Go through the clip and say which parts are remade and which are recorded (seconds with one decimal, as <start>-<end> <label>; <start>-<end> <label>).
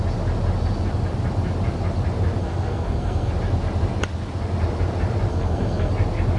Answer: 0.0-2.4 recorded; 2.4-3.3 remade; 3.3-5.3 recorded; 5.3-5.9 remade; 5.9-6.4 recorded